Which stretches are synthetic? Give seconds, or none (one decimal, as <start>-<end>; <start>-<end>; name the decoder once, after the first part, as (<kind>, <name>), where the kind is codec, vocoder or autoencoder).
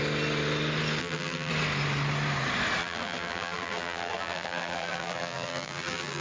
1.0-1.5 (vocoder, BigVGAN v2); 2.8-6.2